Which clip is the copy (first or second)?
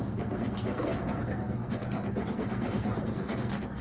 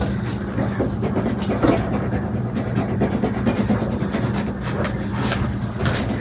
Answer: first